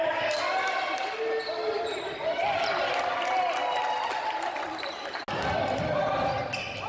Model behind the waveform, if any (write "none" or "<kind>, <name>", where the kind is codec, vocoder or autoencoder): none